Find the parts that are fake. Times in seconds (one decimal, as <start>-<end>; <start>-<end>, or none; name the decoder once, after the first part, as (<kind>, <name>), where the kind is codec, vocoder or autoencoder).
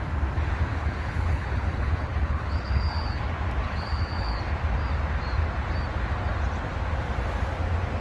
0.7-3.2 (codec, HILCodec); 3.6-4.4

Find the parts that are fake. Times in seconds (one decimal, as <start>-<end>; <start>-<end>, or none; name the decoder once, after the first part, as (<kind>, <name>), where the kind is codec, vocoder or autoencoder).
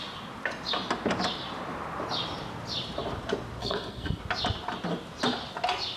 3.6-4.2 (codec, SNAC)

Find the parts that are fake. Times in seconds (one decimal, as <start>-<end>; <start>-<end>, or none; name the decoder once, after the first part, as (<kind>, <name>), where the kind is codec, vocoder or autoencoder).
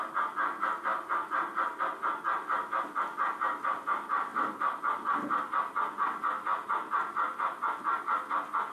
none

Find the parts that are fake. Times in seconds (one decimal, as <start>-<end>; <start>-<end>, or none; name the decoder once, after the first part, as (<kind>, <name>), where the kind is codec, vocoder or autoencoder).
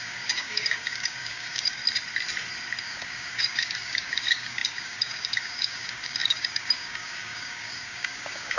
0.0-1.8 (codec, DAC); 2.8-8.6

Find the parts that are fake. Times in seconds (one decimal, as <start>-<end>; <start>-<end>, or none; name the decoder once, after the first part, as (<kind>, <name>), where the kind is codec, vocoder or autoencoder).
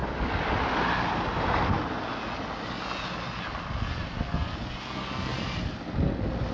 5.3-5.8 (vocoder, BigVGAN v2)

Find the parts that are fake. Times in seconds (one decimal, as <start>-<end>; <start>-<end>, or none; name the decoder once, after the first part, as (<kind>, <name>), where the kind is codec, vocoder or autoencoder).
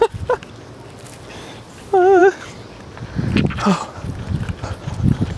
none